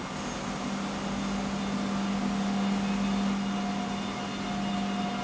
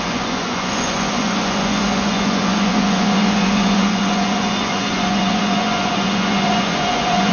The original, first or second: first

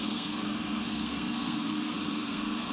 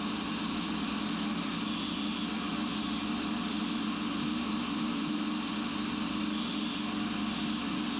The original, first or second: second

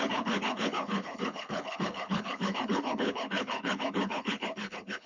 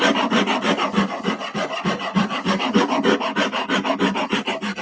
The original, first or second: second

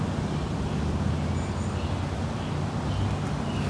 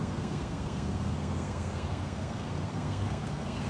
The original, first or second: first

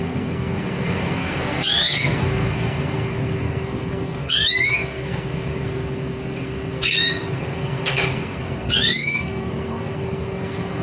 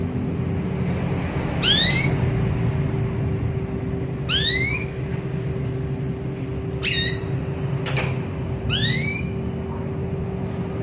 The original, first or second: second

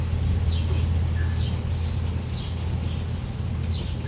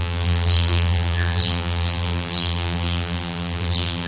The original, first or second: first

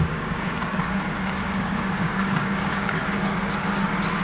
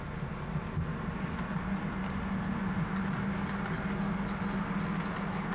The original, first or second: second